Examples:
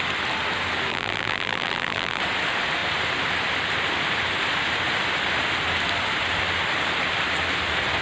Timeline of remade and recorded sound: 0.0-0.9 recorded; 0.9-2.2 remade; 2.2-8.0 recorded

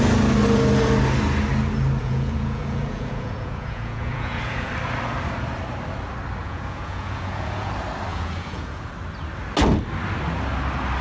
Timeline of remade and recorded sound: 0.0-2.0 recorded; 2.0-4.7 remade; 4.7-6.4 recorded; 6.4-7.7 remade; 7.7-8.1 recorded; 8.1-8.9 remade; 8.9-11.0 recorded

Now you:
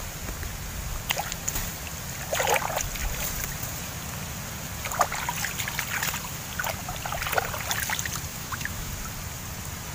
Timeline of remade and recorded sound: 0.0-8.3 recorded; 8.3-8.9 remade; 8.9-9.9 recorded

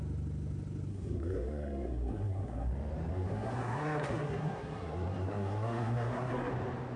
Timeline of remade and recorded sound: 0.0-0.9 recorded; 0.9-2.7 remade; 2.7-3.1 recorded; 3.1-6.5 remade; 6.5-7.0 recorded

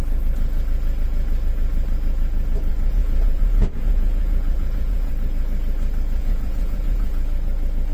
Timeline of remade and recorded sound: 0.0-2.7 recorded; 2.7-5.1 remade; 5.1-6.2 recorded; 6.2-7.1 remade; 7.1-7.9 recorded

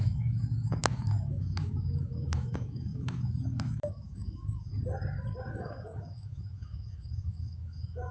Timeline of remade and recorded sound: 0.0-4.7 remade; 4.7-5.5 recorded; 5.5-8.1 remade

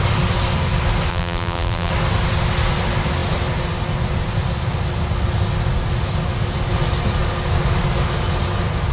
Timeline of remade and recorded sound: 0.0-1.1 recorded; 1.1-1.9 remade; 1.9-8.9 recorded

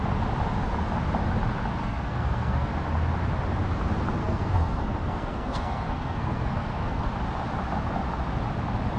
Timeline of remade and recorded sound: 0.0-1.8 recorded; 1.8-2.7 remade; 2.7-4.2 recorded; 4.2-7.1 remade; 7.1-9.0 recorded